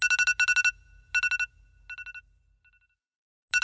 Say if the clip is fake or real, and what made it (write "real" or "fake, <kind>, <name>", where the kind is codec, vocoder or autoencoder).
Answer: real